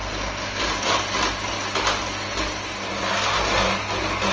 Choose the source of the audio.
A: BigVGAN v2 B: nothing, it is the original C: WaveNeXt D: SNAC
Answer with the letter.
B